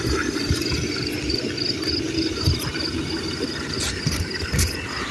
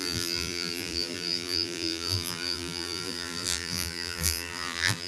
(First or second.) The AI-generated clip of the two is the second